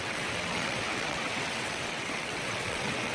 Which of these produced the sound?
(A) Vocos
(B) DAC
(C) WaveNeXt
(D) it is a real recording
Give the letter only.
C